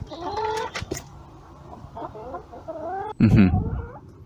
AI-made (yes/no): no